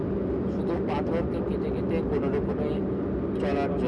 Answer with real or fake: real